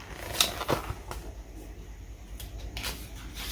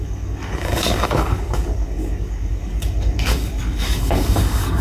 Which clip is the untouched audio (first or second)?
first